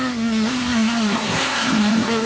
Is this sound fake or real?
fake